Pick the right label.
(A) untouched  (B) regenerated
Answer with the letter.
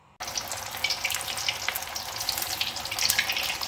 A